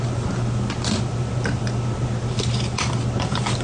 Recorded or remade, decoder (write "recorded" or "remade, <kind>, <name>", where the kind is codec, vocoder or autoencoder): recorded